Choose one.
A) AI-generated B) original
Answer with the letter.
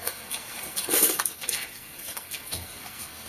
A